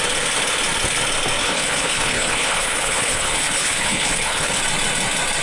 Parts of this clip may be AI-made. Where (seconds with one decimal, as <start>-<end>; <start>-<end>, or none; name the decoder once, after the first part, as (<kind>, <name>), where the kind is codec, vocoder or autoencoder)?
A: 1.4-4.6 (codec, HILCodec)